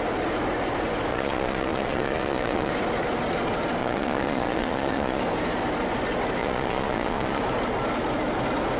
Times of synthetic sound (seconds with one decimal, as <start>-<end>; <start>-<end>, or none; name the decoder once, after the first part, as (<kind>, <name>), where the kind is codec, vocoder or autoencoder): 1.1-2.7 (vocoder, Vocos); 3.8-5.2; 6.4-7.4